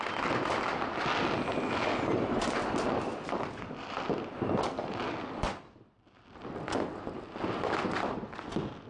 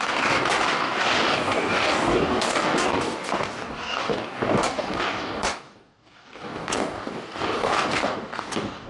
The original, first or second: first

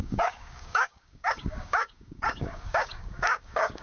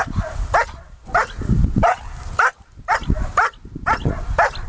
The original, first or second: second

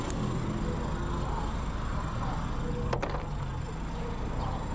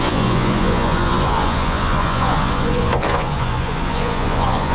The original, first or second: first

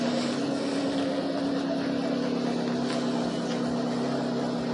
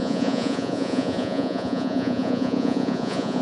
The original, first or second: first